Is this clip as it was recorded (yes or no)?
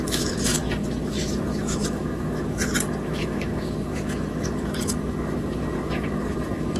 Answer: no